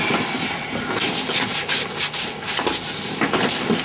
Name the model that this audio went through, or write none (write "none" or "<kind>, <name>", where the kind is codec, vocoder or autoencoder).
none